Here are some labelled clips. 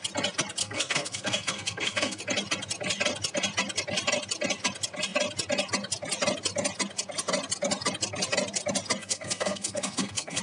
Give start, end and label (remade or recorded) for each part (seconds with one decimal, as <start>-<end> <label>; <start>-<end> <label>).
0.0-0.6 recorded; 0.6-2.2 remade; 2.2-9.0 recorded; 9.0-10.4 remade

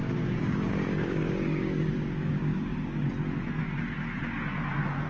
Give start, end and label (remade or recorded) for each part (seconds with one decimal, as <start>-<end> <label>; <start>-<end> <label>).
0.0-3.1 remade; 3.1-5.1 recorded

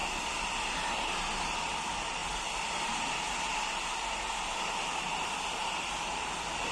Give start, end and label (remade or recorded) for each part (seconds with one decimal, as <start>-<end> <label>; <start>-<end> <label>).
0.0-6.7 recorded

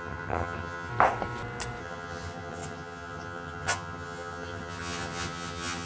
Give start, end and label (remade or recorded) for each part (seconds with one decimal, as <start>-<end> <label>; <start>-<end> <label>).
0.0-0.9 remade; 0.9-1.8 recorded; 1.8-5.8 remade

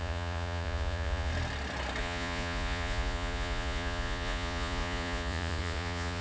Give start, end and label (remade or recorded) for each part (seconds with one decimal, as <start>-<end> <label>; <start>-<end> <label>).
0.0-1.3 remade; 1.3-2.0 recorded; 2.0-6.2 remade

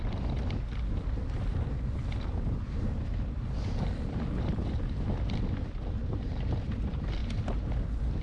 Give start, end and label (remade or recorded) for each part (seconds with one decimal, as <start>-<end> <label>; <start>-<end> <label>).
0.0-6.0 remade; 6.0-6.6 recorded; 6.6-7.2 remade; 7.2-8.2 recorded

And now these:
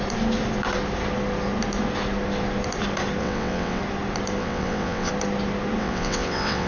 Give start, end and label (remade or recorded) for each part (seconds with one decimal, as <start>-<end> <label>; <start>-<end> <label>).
0.0-3.2 recorded; 3.2-3.8 remade; 3.8-4.4 recorded; 4.4-5.1 remade; 5.1-5.8 recorded; 5.8-6.7 remade

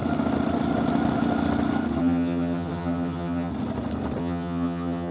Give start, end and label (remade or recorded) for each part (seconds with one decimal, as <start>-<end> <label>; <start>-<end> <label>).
0.0-2.0 recorded; 2.0-3.5 remade; 3.5-4.2 recorded; 4.2-5.1 remade